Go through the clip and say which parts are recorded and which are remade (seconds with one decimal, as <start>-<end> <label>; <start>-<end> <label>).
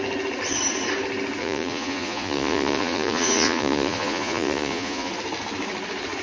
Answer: 0.0-1.4 recorded; 1.4-5.1 remade; 5.1-6.2 recorded